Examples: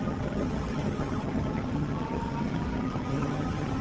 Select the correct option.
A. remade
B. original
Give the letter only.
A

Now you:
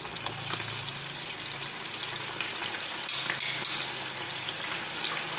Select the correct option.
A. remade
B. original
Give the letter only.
B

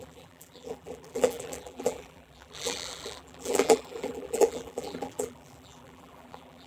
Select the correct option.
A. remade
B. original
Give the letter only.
A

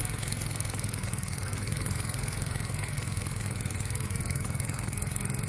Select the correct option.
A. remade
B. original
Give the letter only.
A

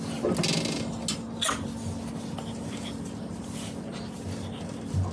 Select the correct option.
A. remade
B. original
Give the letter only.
B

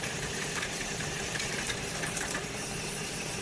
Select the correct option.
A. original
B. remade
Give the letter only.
B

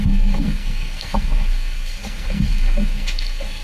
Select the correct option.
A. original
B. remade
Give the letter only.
B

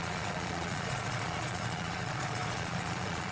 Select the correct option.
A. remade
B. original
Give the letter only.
A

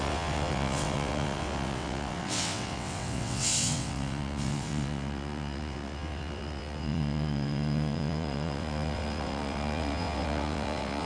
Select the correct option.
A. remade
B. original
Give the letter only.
A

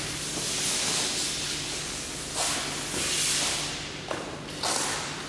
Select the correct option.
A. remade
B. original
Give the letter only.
B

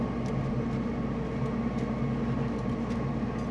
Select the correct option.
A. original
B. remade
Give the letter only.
A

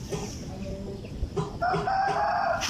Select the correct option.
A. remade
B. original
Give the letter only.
B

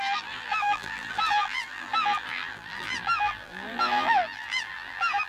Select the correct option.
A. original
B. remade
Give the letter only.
B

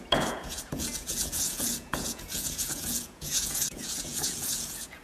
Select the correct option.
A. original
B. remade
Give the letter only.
B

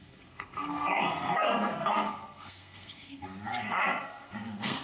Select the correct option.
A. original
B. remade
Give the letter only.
B